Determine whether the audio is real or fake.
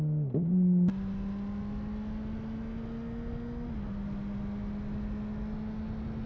real